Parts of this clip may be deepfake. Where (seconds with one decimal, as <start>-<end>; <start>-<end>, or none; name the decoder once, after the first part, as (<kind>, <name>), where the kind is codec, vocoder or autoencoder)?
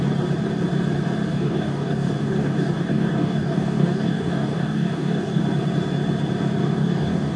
1.3-5.4 (codec, DAC); 6.6-7.4